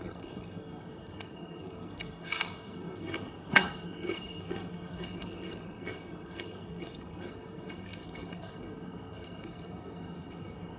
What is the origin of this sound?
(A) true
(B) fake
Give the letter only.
B